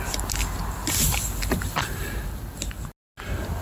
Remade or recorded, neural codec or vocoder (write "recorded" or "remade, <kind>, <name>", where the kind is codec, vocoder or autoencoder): recorded